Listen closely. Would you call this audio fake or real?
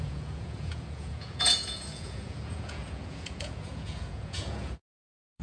fake